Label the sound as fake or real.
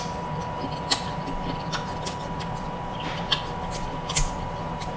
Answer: real